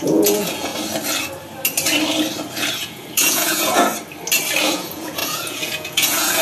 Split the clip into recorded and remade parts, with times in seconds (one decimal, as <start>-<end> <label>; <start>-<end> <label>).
0.0-0.7 remade; 0.7-2.7 recorded; 2.7-3.9 remade; 3.9-4.6 recorded; 4.6-6.4 remade